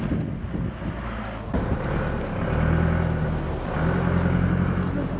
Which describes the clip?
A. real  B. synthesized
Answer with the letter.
A